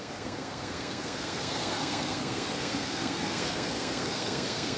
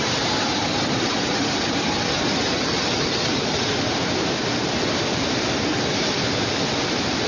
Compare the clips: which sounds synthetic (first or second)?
first